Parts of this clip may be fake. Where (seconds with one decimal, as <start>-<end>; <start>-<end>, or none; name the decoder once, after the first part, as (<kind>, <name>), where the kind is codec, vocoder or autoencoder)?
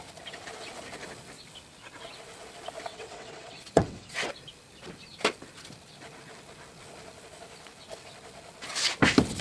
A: 2.9-4.3 (vocoder, WaveNeXt)